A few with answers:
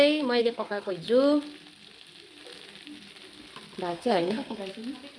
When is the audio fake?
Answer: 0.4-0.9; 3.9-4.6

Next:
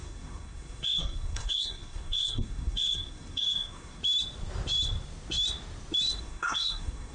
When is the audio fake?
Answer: 0.0-4.0; 6.2-7.1

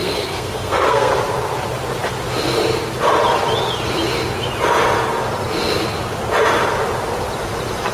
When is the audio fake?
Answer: 0.0-1.1

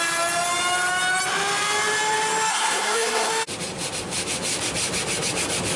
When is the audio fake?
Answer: 2.5-3.3